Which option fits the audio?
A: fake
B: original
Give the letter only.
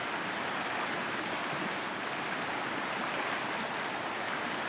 B